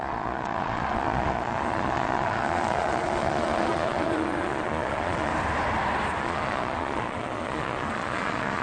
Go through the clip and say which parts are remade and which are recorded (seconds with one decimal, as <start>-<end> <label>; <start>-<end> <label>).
0.0-5.3 remade; 5.3-6.2 recorded; 6.2-8.6 remade